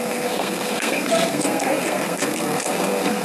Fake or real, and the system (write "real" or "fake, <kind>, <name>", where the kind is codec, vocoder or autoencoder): fake, codec, SNAC